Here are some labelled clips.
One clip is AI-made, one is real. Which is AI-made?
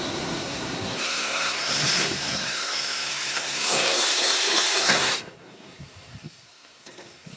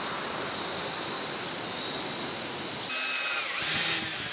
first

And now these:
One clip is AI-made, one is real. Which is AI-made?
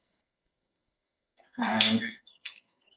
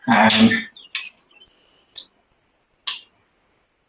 first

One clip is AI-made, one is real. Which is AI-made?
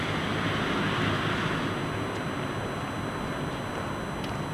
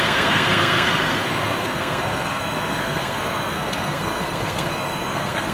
second